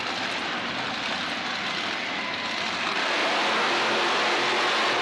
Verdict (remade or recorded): recorded